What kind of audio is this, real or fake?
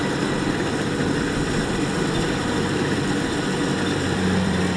fake